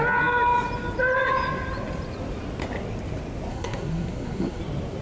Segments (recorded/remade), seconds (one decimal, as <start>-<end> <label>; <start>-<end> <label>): 0.0-3.5 recorded; 3.5-4.6 remade; 4.6-5.0 recorded